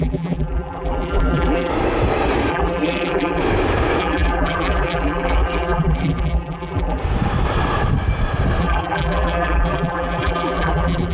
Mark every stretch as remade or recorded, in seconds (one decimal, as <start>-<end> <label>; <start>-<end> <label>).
0.0-1.7 remade; 1.7-2.5 recorded; 2.5-3.4 remade; 3.4-4.0 recorded; 4.0-7.0 remade; 7.0-8.6 recorded; 8.6-11.1 remade

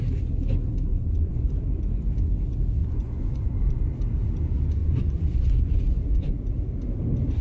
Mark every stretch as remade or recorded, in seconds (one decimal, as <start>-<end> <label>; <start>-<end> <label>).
0.0-0.9 recorded; 0.9-1.5 remade; 1.5-2.8 recorded; 2.8-3.8 remade; 3.8-4.8 recorded; 4.8-6.3 remade; 6.3-7.4 recorded